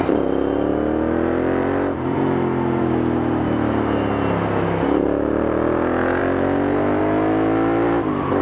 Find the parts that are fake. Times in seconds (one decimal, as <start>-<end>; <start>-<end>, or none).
none